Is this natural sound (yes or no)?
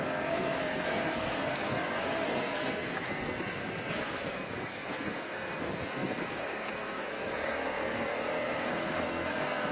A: no